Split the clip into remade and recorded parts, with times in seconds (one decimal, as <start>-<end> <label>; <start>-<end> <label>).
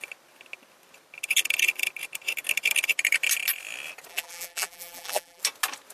0.0-4.1 recorded; 4.1-5.4 remade; 5.4-5.9 recorded